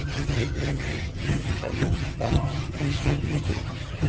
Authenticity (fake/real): fake